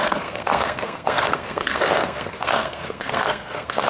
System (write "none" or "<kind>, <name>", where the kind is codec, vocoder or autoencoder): codec, SNAC